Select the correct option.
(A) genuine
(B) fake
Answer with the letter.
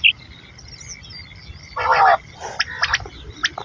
A